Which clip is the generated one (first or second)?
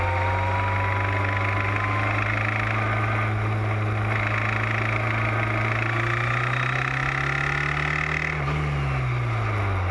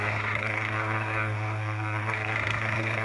second